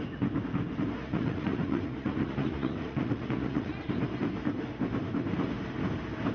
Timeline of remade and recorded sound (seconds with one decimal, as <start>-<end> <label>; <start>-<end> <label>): 0.0-1.0 recorded; 1.0-3.9 remade; 3.9-6.3 recorded